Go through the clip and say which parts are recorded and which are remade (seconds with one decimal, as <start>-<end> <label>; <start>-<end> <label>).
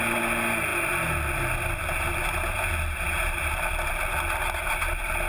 0.0-5.3 recorded